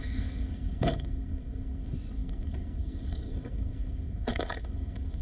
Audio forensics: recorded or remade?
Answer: remade